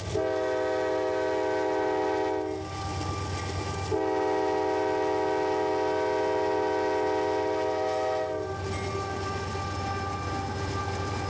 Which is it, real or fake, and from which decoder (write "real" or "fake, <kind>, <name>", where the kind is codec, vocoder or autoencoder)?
real